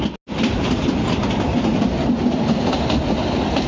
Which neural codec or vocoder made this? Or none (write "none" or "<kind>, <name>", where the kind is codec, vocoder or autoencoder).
none